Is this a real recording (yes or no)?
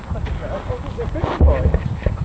yes